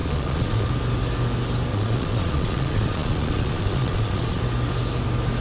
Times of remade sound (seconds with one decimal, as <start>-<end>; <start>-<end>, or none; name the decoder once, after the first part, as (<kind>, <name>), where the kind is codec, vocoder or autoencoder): 0.0-0.7 (vocoder, Vocos); 1.7-4.4